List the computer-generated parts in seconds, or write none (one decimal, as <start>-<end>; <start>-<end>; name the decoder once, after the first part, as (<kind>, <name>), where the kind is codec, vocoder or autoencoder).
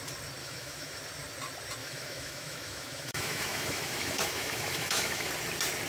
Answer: 0.4-1.0 (autoencoder, DAC-VAE); 1.8-5.3